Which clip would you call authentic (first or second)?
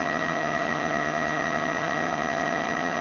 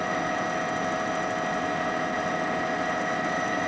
second